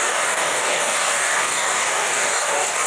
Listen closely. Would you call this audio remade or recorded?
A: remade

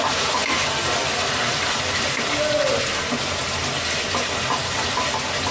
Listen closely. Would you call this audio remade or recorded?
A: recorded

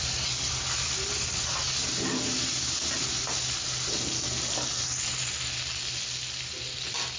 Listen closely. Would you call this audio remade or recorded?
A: recorded